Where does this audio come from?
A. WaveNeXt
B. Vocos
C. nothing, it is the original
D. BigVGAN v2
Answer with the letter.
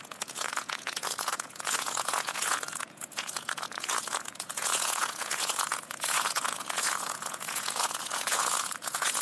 B